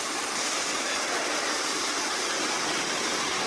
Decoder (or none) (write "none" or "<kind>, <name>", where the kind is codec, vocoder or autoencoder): none